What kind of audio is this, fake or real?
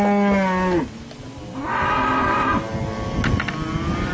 real